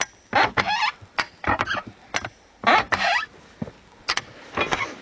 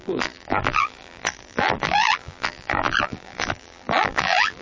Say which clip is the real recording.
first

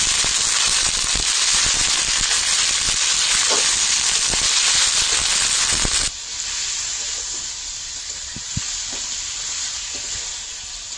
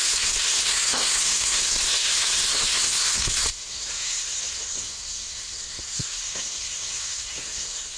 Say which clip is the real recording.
first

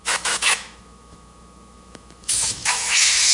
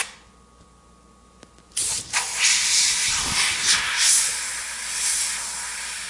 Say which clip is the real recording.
second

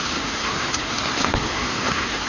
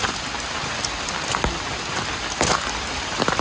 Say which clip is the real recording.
second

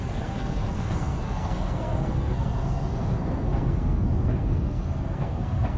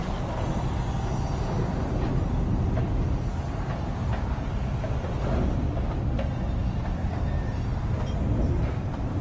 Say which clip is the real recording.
second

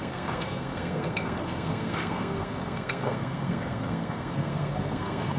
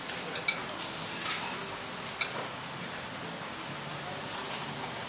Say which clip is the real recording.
second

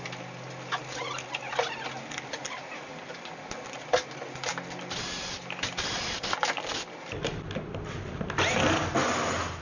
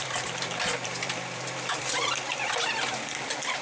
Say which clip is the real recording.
first